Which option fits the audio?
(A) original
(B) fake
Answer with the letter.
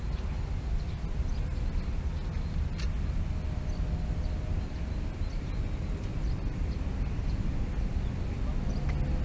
A